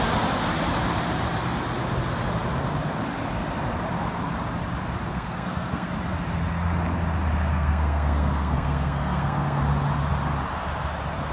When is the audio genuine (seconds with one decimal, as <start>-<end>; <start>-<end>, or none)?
0.0-5.1; 5.9-7.5; 9.6-11.3